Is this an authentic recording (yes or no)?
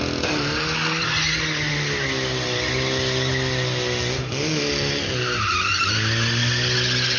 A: yes